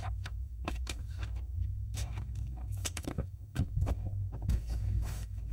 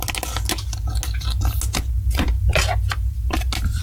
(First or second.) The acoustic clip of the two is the second